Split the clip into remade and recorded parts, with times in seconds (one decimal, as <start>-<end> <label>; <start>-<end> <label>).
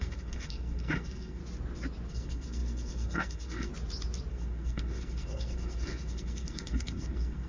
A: 0.0-1.4 remade; 1.4-2.1 recorded; 2.1-3.7 remade; 3.7-4.3 recorded; 4.3-7.5 remade